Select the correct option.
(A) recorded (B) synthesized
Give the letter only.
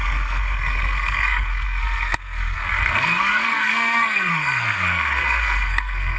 B